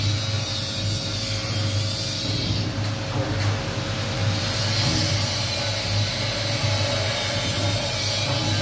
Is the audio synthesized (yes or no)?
no